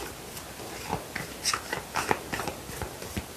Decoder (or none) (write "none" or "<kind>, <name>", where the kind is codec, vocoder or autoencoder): none